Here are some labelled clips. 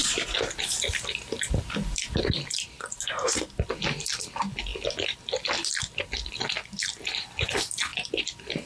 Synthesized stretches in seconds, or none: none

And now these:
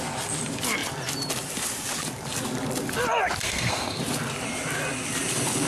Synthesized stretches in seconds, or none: 3.4-4.0 (codec, SNAC)

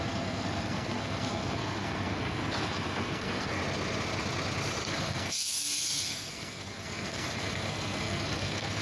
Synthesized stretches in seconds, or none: 0.0-3.6 (codec, SNAC); 4.8-8.8

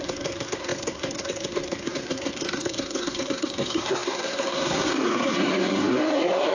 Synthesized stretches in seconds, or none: 0.0-6.5 (codec, SNAC)